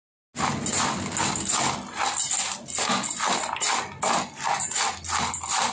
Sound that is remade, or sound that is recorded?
recorded